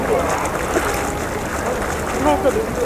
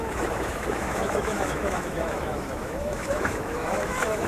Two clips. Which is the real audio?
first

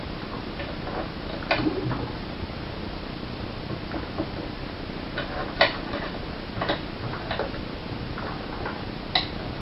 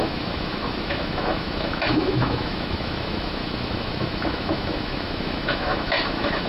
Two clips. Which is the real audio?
first